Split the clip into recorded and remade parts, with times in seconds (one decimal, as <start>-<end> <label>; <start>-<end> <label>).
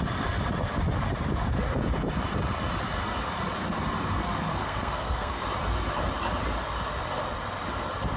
0.0-4.5 recorded; 4.5-5.4 remade; 5.4-8.2 recorded